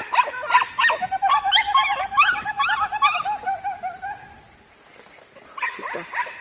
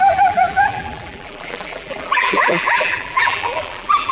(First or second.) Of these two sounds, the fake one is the second